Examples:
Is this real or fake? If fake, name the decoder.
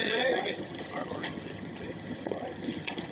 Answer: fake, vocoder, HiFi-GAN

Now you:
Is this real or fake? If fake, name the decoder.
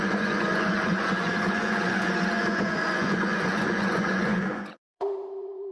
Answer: fake, vocoder, Vocos